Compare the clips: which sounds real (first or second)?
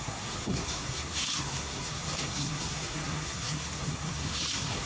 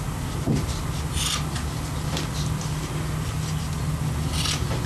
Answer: second